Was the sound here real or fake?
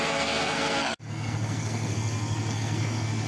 fake